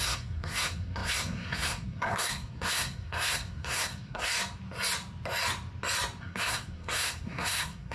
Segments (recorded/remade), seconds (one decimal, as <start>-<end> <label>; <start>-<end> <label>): 0.0-4.3 remade; 4.3-6.2 recorded; 6.2-7.9 remade